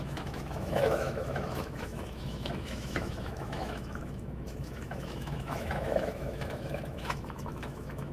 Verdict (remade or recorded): remade